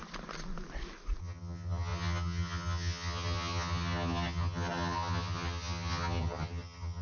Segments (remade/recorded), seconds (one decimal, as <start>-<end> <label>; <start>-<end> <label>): 0.0-1.2 recorded; 1.2-7.0 remade